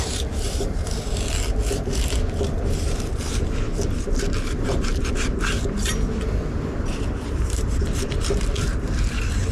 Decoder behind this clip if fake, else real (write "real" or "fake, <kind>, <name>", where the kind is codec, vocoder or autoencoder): fake, vocoder, BigVGAN v2